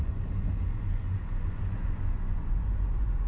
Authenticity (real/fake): fake